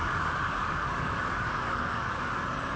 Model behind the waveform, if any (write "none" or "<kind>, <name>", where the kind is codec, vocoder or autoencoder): codec, DAC